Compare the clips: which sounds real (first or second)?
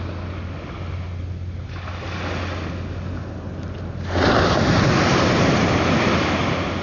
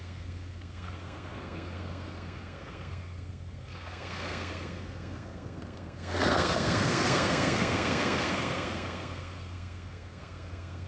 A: first